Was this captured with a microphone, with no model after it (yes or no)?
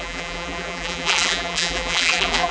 no